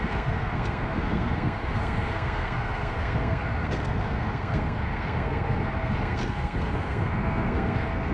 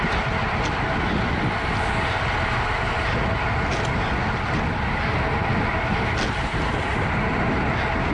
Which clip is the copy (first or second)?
first